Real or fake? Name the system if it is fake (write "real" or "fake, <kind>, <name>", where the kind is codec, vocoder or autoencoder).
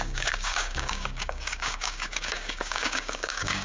fake, codec, DAC